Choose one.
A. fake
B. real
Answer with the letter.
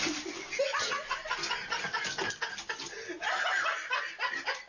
B